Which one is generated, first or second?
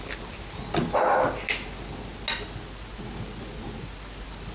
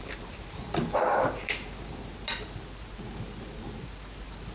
second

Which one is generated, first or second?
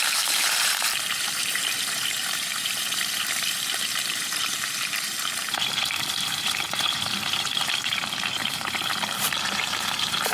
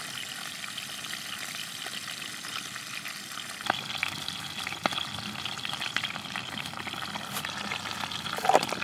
first